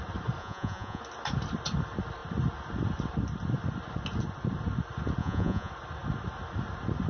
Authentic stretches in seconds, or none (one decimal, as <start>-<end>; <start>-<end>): 0.0-0.4; 1.0-5.2; 5.7-7.1